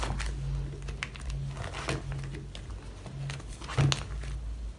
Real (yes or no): yes